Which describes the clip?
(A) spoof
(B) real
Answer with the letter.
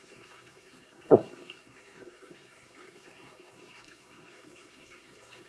A